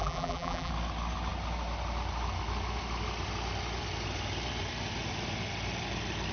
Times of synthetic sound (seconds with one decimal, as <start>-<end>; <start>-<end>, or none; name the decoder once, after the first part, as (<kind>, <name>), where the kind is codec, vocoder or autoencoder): 0.0-0.7 (vocoder, BigVGAN v2)